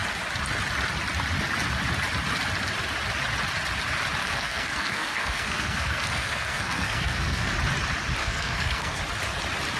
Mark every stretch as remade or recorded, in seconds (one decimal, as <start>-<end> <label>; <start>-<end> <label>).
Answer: 0.0-4.2 recorded; 4.2-7.5 remade; 7.5-8.2 recorded; 8.2-9.0 remade; 9.0-9.8 recorded